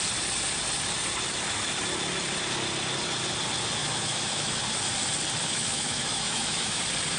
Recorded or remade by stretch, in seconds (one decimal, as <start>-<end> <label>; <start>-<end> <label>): 0.0-3.8 recorded; 3.8-4.6 remade; 4.6-5.4 recorded; 5.4-6.8 remade; 6.8-7.2 recorded